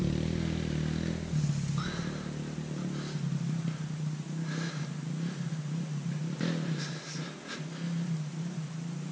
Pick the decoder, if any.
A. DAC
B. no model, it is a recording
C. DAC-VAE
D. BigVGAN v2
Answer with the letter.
B